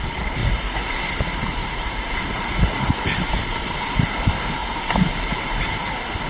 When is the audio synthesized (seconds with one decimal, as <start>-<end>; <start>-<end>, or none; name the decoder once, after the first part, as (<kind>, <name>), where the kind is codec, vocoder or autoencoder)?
0.4-0.9 (vocoder, Vocos); 1.6-2.9